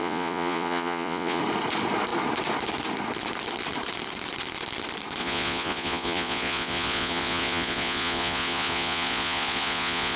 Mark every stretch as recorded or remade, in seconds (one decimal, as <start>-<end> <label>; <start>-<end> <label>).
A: 0.0-1.4 remade; 1.4-5.2 recorded; 5.2-10.2 remade